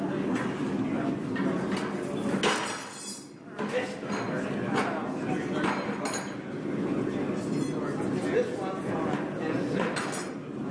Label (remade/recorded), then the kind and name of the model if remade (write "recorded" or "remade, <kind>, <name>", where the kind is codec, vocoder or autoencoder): recorded